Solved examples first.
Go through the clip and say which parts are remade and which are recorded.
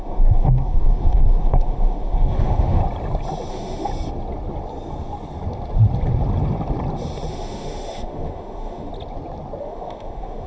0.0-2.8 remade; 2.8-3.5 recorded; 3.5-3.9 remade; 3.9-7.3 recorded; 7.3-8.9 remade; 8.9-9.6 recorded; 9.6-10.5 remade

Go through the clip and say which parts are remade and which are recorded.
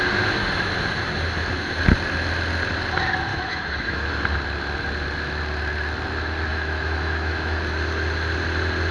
0.0-3.3 recorded; 3.3-4.1 remade; 4.1-6.5 recorded; 6.5-7.6 remade; 7.6-8.9 recorded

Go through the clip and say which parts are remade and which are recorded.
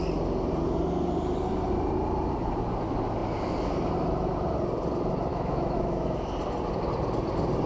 0.0-5.3 recorded; 5.3-6.3 remade; 6.3-7.7 recorded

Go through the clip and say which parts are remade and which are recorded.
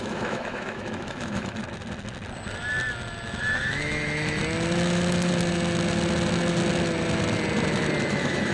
0.0-1.6 remade; 1.6-3.4 recorded; 3.4-4.4 remade; 4.4-8.1 recorded; 8.1-8.5 remade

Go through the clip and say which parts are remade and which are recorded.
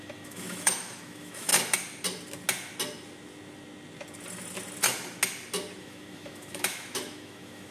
0.0-1.5 remade; 1.5-5.8 recorded; 5.8-7.7 remade